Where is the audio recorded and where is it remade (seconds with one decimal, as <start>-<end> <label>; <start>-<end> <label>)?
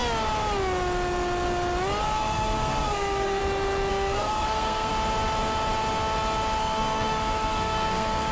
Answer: 0.0-2.0 recorded; 2.0-3.4 remade; 3.4-3.9 recorded; 3.9-4.9 remade; 4.9-6.6 recorded; 6.6-8.3 remade